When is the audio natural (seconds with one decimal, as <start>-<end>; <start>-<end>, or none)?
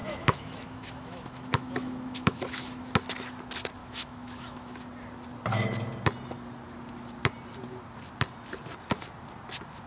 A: 2.9-3.8; 4.8-9.9